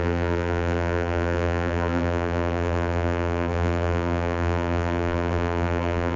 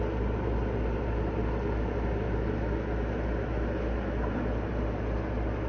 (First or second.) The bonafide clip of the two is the second